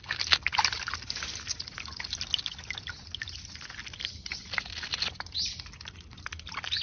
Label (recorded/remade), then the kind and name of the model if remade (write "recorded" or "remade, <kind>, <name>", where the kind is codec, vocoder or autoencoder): recorded